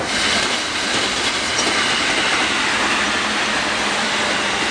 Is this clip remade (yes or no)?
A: no